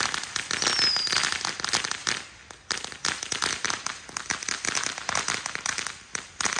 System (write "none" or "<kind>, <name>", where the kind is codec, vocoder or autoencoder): none